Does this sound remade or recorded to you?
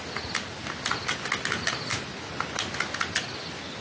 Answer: recorded